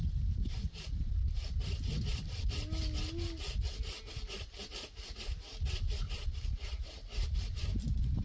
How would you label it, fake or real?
real